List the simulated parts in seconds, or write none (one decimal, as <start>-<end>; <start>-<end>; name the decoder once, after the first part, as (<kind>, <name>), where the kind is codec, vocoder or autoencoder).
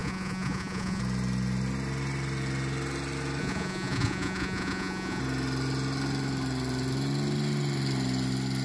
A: 0.0-1.0 (vocoder, Vocos); 3.4-5.2